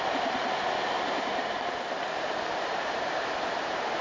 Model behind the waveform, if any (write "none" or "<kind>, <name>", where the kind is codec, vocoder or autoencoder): vocoder, BigVGAN v2